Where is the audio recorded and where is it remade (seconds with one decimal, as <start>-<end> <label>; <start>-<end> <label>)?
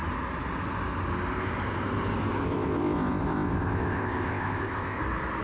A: 0.0-2.4 recorded; 2.4-5.0 remade; 5.0-5.4 recorded